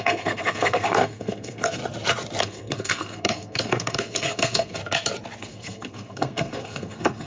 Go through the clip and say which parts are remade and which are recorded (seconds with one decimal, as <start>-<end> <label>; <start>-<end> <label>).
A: 0.0-1.8 remade; 1.8-2.4 recorded; 2.4-4.8 remade; 4.8-5.4 recorded; 5.4-7.3 remade

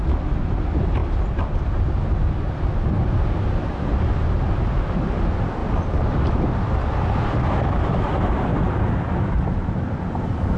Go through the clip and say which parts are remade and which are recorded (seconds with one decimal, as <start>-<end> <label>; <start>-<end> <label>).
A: 0.0-10.6 recorded